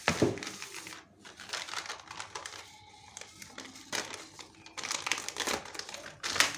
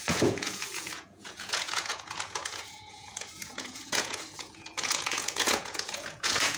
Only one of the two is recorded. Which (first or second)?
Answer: first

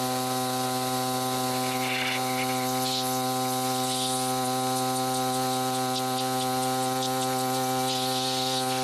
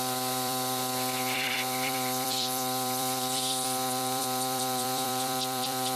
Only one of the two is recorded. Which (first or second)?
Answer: first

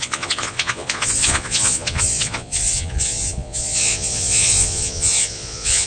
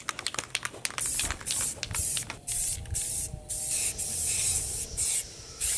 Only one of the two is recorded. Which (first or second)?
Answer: second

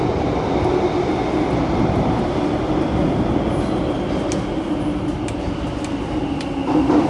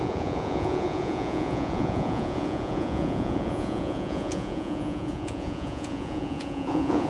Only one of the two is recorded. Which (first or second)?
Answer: first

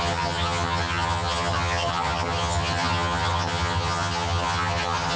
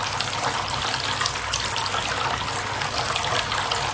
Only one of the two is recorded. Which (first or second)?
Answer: second